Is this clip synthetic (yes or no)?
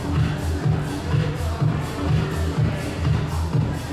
no